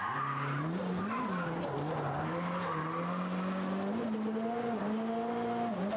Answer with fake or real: real